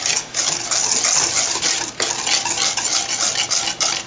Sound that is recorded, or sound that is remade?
recorded